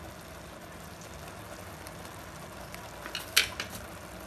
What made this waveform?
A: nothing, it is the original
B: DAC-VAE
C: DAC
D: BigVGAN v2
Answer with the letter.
A